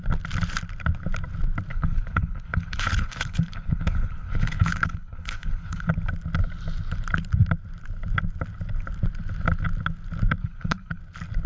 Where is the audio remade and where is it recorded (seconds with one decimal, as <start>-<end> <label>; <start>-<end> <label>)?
0.0-1.7 recorded; 1.7-5.9 remade; 5.9-10.4 recorded; 10.4-11.0 remade; 11.0-11.5 recorded